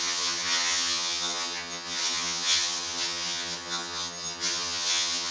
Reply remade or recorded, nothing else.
remade